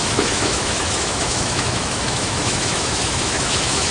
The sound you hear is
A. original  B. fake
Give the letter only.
B